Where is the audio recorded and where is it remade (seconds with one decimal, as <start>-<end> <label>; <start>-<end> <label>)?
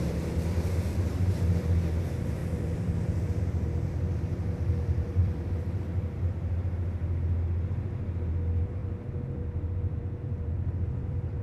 0.0-7.0 remade; 7.0-8.3 recorded; 8.3-11.4 remade